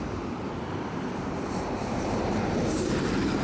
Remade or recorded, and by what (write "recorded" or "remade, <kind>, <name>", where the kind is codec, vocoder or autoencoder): remade, vocoder, BigVGAN v2